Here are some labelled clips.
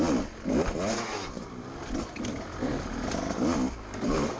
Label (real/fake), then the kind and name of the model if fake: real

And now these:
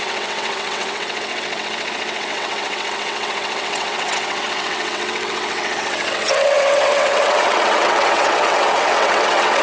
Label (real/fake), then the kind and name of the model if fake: fake, vocoder, WaveNeXt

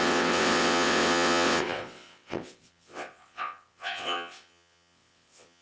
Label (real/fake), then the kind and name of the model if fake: fake, vocoder, WaveNeXt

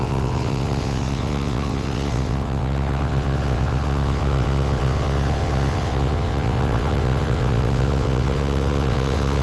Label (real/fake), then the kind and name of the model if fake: fake, vocoder, WaveNeXt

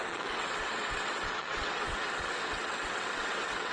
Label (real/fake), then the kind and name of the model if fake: fake, vocoder, WaveNeXt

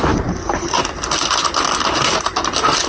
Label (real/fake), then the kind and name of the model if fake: real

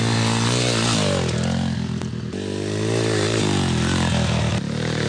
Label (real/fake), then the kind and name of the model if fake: real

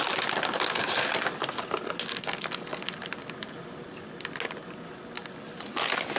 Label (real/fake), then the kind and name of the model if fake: real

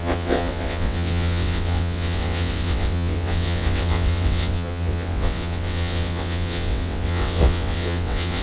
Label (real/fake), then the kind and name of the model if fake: fake, vocoder, WaveNeXt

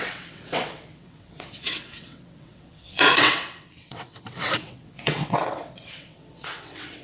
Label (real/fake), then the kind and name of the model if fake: fake, vocoder, WaveNeXt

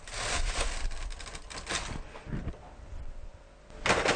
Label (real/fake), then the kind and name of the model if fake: real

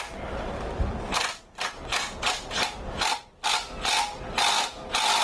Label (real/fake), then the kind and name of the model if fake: real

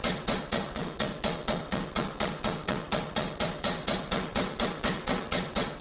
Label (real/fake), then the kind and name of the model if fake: fake, vocoder, WaveNeXt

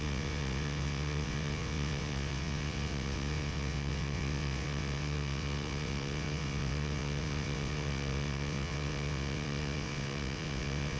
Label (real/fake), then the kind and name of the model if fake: fake, vocoder, WaveNeXt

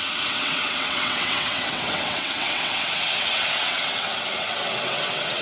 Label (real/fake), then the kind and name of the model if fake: fake, vocoder, WaveNeXt